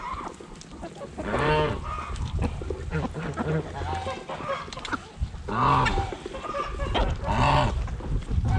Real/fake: real